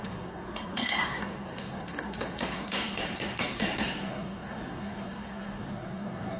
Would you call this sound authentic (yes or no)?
no